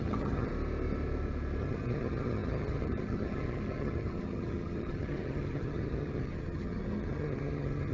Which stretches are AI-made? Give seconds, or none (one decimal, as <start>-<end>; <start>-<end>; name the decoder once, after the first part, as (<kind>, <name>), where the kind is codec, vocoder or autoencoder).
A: 0.0-0.5 (vocoder, HiFi-GAN); 1.6-7.9